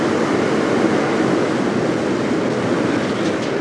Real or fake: real